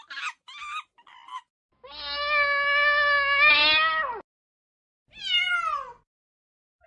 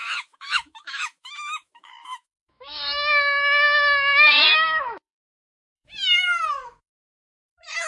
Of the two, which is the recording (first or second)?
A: first